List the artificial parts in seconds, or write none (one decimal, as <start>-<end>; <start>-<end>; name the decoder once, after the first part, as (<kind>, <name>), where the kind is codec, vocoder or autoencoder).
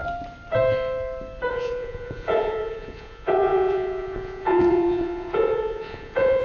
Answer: 1.5-6.4 (vocoder, Vocos)